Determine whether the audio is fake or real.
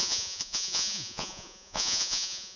fake